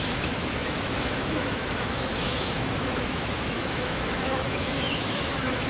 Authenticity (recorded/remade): remade